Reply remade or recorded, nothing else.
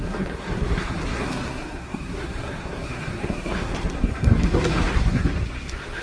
remade